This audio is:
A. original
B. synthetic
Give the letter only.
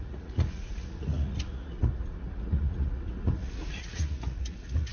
B